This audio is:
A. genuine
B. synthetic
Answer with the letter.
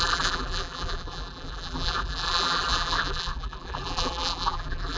B